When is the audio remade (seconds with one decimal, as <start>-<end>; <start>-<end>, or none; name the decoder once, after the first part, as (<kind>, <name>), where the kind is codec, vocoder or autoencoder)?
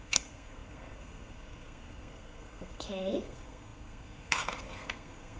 0.0-5.4 (codec, SNAC)